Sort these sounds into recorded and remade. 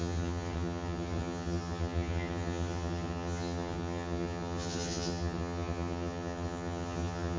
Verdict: remade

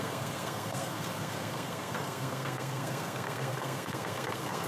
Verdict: remade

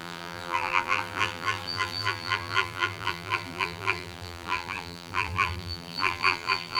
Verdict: remade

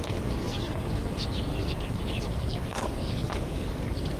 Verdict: remade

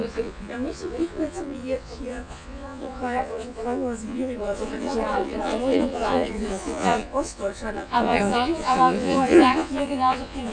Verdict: remade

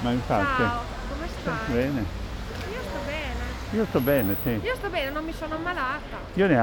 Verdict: recorded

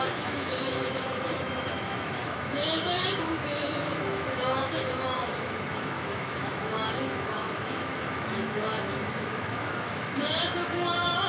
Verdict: remade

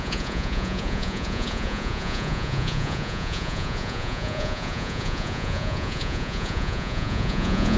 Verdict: remade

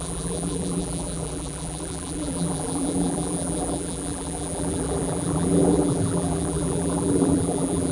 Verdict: remade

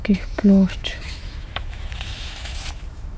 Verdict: remade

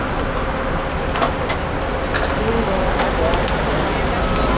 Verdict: recorded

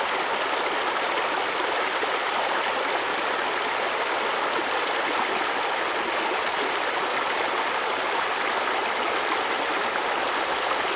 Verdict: recorded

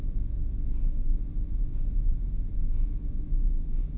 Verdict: remade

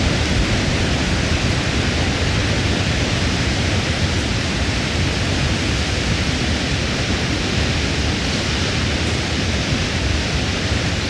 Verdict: recorded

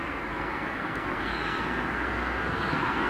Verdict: remade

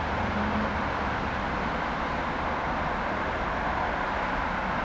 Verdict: recorded